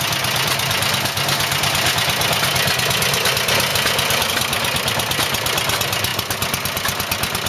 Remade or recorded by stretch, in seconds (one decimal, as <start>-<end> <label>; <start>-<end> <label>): 0.0-7.5 recorded